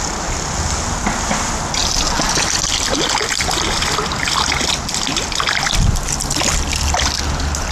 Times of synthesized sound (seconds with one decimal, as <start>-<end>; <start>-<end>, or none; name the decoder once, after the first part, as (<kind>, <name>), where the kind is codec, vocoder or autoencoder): none